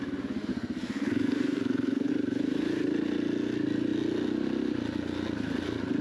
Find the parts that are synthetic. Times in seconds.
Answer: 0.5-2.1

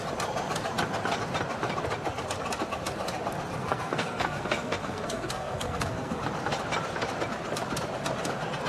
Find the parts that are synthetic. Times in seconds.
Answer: 3.6-6.2

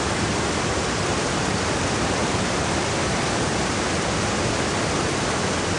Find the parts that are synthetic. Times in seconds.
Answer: none